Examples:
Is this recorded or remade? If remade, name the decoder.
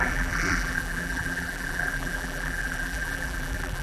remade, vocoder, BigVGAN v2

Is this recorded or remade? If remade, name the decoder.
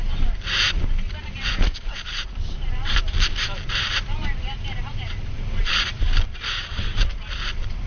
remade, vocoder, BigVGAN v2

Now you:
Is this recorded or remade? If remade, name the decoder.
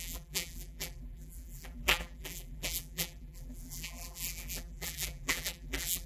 remade, vocoder, BigVGAN v2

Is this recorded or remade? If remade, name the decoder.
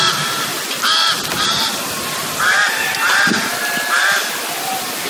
remade, vocoder, BigVGAN v2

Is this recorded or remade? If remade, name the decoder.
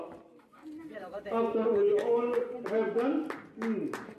recorded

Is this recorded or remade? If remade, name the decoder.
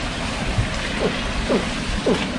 remade, vocoder, BigVGAN v2